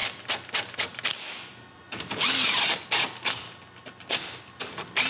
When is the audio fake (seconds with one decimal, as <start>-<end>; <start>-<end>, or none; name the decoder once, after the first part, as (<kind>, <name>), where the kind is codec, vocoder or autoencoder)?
none